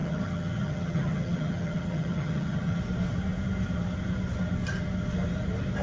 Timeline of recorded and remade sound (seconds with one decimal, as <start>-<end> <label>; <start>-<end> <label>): 0.0-2.8 remade; 2.8-5.8 recorded